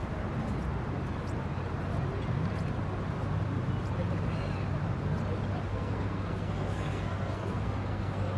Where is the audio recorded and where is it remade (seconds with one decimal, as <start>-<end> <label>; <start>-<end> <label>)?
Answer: 0.0-5.7 recorded; 5.7-8.4 remade

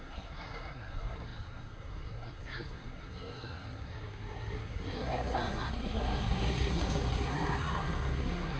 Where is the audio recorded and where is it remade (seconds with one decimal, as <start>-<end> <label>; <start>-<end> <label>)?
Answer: 0.0-8.6 remade

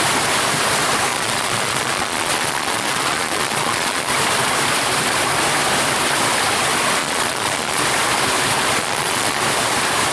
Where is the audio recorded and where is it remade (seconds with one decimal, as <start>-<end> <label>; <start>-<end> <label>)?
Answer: 0.0-1.1 recorded; 1.1-4.1 remade; 4.1-7.0 recorded; 7.0-7.8 remade; 7.8-8.8 recorded; 8.8-9.4 remade; 9.4-10.1 recorded

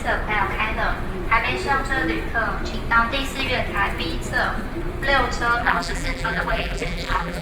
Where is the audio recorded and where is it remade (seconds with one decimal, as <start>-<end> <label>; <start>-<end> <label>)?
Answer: 0.0-5.6 recorded; 5.6-7.4 remade

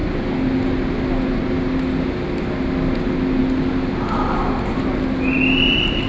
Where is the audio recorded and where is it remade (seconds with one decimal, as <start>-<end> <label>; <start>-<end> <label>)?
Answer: 0.0-6.1 recorded